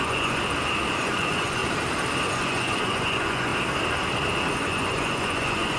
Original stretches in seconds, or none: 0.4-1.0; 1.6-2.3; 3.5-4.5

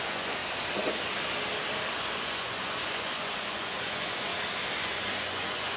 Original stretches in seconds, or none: 0.4-1.9; 4.3-4.8

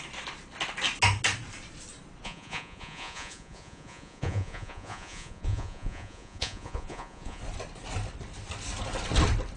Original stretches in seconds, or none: 0.0-2.2; 7.4-9.6

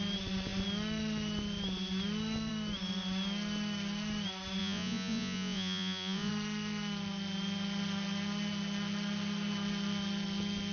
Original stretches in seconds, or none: 0.0-4.6; 6.3-10.7

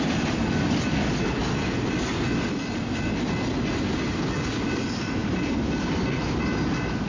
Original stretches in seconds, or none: 0.0-7.1

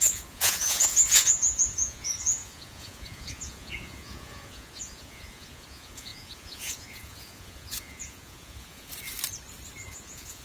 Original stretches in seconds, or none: 8.9-9.9